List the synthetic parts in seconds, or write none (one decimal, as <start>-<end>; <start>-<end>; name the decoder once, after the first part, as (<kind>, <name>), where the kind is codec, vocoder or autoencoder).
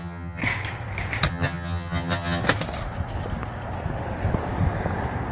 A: 0.0-0.4 (vocoder, HiFi-GAN); 1.3-2.4